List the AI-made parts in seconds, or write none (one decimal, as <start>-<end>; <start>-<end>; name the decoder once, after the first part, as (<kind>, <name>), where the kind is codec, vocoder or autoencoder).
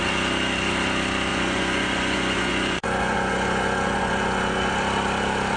1.3-4.7 (vocoder, Vocos)